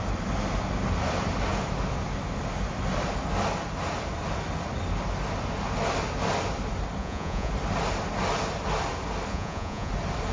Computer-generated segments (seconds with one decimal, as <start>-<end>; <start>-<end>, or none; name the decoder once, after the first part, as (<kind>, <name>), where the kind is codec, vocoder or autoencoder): 7.0-7.5 (vocoder, Vocos); 9.3-9.9